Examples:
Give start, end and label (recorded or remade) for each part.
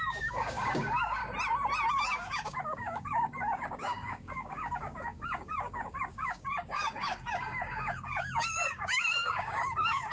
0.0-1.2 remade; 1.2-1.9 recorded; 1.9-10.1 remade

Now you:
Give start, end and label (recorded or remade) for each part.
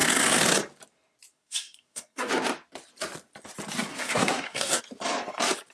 0.0-1.3 recorded; 1.3-2.3 remade; 2.3-3.9 recorded; 3.9-4.8 remade; 4.8-5.7 recorded